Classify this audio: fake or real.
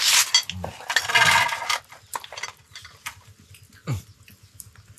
real